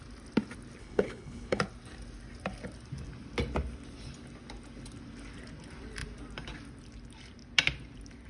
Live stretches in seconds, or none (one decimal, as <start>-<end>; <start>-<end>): 0.0-0.8; 1.6-8.3